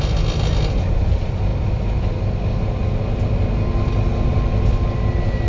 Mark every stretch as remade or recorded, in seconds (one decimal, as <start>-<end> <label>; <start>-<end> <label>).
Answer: 0.0-5.5 recorded